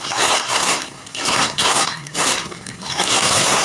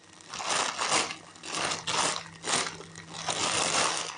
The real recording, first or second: second